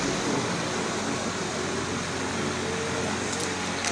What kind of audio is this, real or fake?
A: real